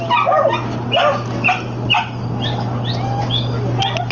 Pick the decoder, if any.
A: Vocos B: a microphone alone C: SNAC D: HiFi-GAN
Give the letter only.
B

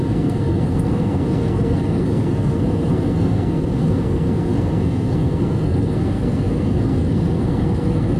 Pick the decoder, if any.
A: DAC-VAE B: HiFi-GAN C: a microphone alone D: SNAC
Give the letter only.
D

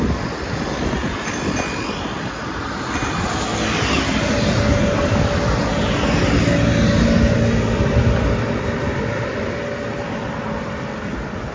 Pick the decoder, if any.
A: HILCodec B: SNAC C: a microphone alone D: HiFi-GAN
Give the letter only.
C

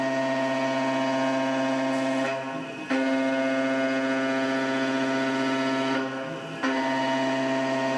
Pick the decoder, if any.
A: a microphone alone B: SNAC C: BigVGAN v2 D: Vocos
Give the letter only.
A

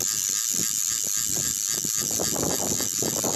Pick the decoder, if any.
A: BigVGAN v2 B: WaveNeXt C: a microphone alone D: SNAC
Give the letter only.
C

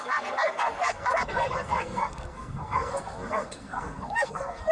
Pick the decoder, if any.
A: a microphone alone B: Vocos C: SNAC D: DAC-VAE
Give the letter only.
C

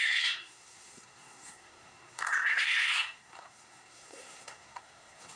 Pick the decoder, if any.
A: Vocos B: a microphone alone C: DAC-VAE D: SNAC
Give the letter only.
D